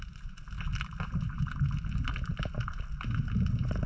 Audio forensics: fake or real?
real